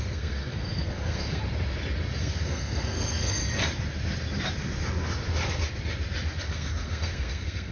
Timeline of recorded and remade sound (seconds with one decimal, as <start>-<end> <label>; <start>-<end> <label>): 0.0-1.4 remade; 1.4-2.2 recorded; 2.2-3.4 remade; 3.4-6.4 recorded; 6.4-7.7 remade